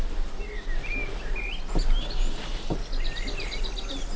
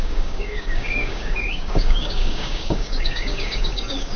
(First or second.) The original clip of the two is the first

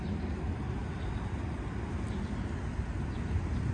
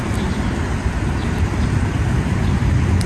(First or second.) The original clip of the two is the first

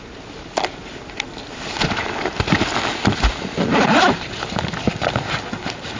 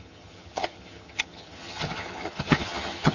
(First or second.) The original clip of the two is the first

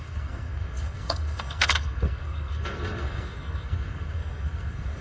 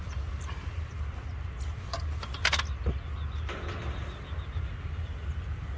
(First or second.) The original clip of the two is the second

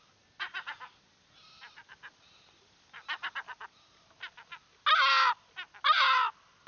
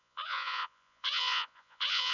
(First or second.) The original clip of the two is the first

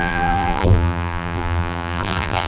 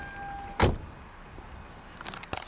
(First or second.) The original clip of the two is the second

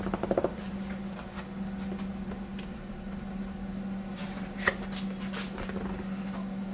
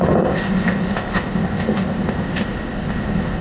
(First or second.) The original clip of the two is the first